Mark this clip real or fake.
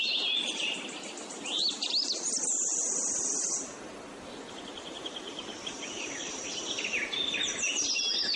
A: real